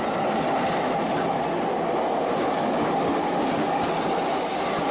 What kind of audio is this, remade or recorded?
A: recorded